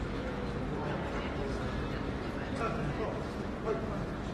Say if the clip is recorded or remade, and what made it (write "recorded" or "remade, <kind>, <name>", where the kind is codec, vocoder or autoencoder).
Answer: recorded